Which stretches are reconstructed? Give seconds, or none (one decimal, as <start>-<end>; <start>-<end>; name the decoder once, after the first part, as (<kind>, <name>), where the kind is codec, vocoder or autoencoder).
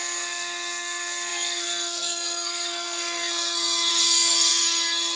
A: 0.0-5.2 (codec, SNAC)